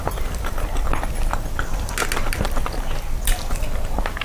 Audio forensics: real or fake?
real